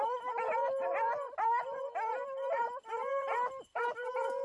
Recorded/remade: remade